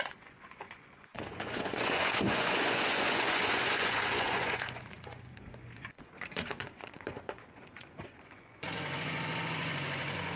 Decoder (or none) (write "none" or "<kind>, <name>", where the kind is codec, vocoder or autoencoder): vocoder, Vocos